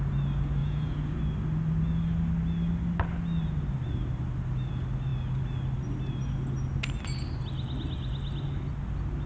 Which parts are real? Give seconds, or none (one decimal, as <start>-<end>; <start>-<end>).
0.0-0.6; 1.2-9.3